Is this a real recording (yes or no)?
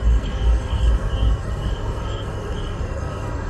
no